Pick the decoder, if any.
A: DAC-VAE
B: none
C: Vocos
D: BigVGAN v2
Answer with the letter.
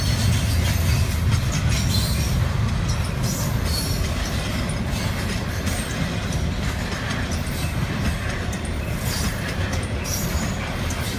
B